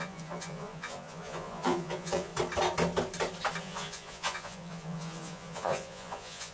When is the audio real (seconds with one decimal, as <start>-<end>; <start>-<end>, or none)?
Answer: 2.3-3.6